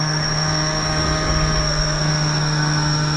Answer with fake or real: fake